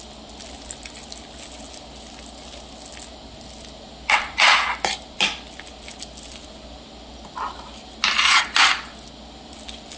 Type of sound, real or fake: real